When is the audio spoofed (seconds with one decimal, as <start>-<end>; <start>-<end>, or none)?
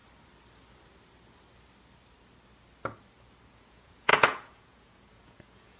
3.5-5.8